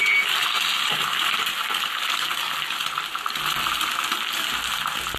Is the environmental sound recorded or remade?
recorded